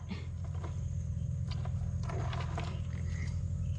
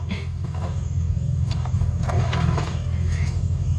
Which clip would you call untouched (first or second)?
first